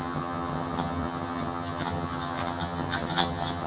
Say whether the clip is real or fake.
fake